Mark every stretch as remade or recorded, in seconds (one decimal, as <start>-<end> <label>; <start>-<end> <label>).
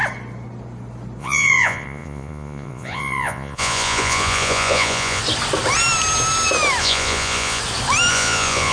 0.0-1.2 recorded; 1.2-5.2 remade; 5.2-6.8 recorded; 6.8-7.6 remade; 7.6-8.1 recorded; 8.1-8.7 remade